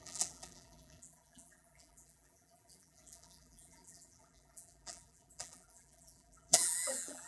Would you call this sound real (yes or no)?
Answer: no